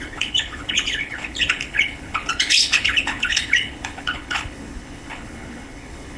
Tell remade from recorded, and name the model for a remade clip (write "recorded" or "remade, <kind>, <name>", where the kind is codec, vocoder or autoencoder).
remade, codec, HILCodec